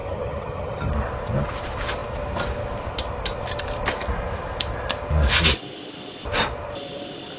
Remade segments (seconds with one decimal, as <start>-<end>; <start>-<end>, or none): 0.0-0.9